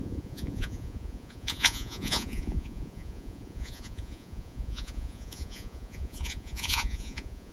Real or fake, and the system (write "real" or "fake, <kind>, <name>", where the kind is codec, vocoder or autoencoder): fake, vocoder, Vocos